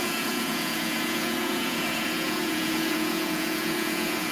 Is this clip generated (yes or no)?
yes